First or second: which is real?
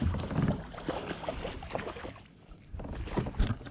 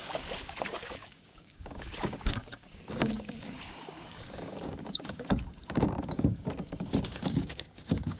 first